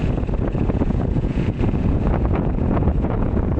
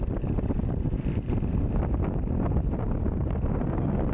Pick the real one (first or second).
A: second